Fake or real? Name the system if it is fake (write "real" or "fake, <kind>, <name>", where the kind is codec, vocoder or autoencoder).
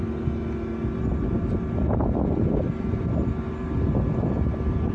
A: real